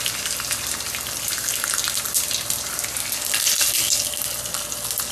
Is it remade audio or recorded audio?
recorded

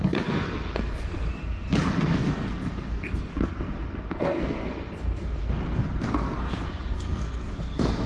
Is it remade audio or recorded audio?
remade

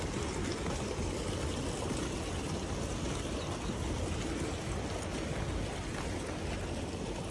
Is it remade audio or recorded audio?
recorded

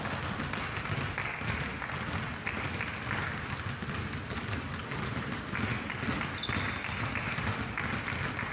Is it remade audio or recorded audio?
recorded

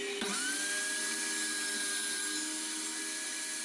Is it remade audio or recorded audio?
recorded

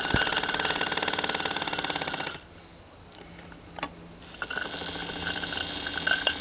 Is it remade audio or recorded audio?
recorded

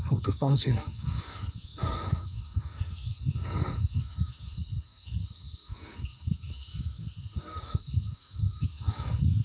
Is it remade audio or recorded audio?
remade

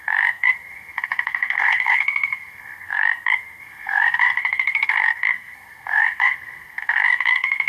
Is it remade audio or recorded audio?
remade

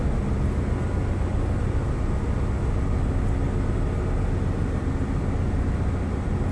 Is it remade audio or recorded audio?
recorded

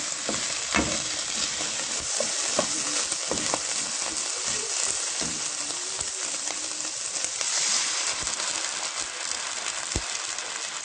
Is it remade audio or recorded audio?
recorded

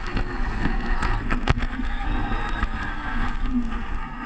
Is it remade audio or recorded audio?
remade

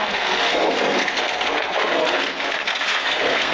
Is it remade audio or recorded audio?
remade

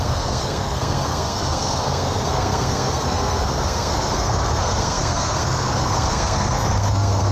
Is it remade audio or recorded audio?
remade